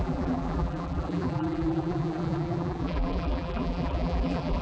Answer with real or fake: fake